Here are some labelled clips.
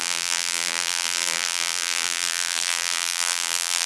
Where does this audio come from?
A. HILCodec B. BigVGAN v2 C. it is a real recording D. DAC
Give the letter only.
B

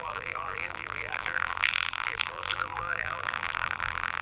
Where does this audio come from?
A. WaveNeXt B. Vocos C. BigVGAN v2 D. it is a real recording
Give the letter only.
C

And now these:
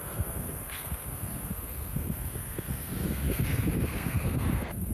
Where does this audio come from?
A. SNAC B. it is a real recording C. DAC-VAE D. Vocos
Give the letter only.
A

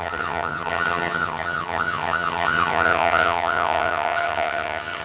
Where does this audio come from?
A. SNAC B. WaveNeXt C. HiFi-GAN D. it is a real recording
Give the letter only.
C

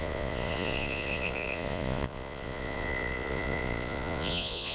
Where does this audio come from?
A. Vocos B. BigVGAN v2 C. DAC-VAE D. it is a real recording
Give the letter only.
A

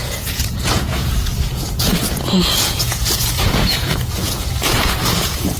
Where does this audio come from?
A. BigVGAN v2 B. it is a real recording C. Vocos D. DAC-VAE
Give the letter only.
C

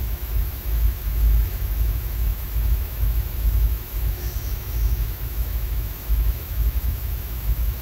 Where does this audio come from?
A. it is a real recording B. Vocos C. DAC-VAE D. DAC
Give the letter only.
C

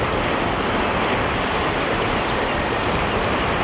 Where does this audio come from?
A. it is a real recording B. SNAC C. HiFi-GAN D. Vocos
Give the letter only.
A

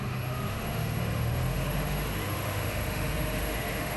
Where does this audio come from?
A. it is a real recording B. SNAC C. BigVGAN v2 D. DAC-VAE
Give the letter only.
D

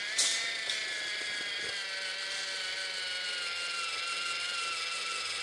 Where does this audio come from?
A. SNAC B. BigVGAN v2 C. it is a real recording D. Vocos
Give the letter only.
C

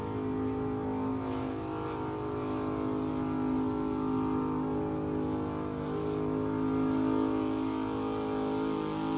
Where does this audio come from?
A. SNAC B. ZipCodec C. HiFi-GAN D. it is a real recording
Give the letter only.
D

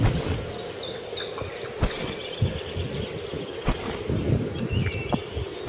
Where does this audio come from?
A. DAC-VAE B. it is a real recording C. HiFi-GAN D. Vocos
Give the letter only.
B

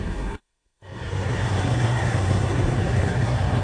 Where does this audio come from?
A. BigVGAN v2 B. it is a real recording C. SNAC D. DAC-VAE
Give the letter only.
C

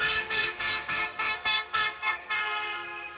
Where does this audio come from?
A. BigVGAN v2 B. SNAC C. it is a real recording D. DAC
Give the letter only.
B